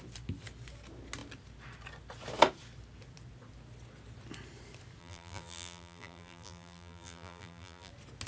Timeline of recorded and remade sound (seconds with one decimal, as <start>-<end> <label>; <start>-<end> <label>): 0.0-5.0 recorded; 5.0-7.9 remade; 7.9-8.3 recorded